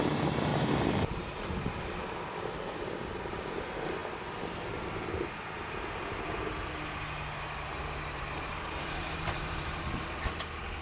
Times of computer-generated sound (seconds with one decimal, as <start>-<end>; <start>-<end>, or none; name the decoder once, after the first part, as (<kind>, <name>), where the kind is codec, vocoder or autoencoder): 0.5-1.4 (vocoder, BigVGAN v2); 7.7-9.8